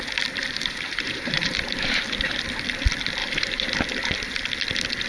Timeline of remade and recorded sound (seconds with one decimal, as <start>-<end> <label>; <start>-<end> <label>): 0.0-0.4 recorded; 0.4-2.0 remade; 2.0-3.2 recorded; 3.2-3.7 remade; 3.7-5.1 recorded